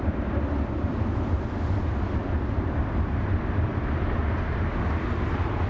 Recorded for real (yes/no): yes